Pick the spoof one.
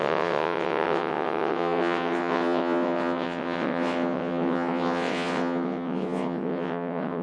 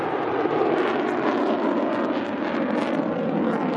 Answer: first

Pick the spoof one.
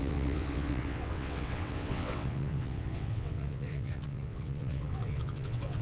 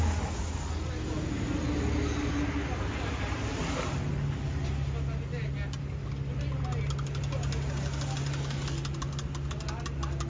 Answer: first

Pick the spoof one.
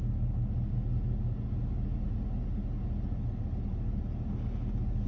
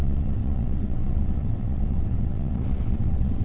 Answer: second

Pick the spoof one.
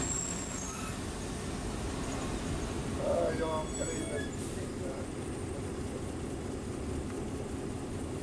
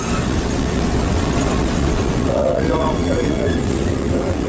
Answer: second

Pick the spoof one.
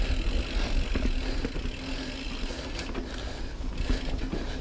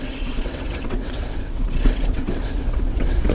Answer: second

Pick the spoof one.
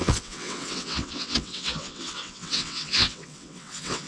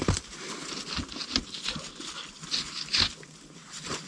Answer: first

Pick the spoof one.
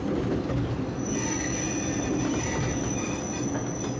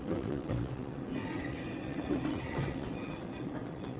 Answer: second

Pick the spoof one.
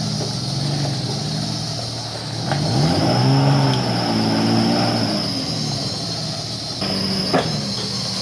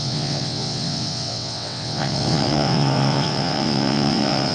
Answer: second